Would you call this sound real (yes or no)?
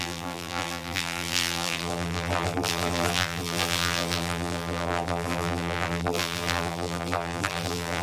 no